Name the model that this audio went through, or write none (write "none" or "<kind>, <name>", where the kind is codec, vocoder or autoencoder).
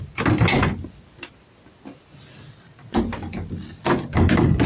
none